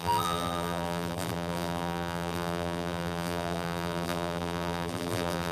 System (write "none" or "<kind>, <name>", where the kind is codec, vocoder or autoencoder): vocoder, BigVGAN v2